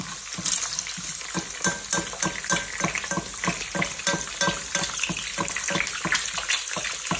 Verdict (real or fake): real